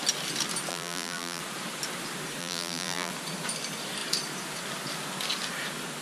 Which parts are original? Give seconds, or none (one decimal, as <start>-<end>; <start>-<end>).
0.0-0.7; 1.4-2.4; 3.1-6.0